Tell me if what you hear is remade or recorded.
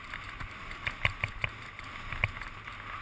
recorded